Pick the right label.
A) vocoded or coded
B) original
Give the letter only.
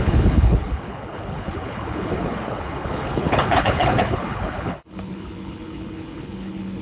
A